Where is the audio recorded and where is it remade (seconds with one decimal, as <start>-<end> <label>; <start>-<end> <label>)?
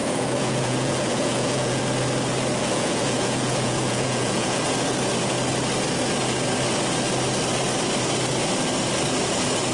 0.0-1.8 remade; 1.8-2.6 recorded; 2.6-4.6 remade; 4.6-9.7 recorded